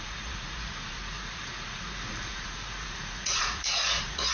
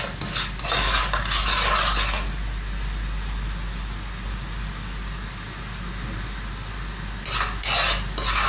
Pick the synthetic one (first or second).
first